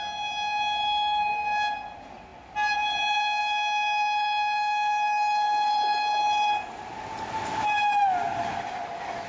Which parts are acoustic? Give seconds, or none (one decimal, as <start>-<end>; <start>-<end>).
0.0-9.3